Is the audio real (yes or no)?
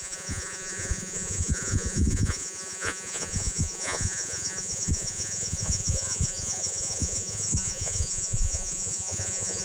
no